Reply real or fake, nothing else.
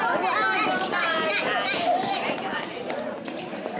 real